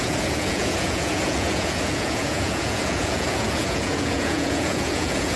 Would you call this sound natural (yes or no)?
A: no